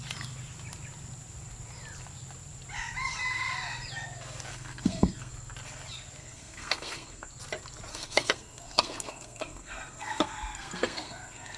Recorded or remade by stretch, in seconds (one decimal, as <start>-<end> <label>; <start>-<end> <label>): 0.0-4.5 recorded; 4.5-5.3 remade; 5.3-6.2 recorded; 6.2-7.3 remade; 7.3-7.9 recorded; 7.9-11.6 remade